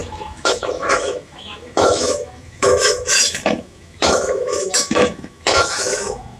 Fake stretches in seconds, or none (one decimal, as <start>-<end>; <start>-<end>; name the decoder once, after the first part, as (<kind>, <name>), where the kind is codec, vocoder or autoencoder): 0.0-6.4 (autoencoder, DAC-VAE)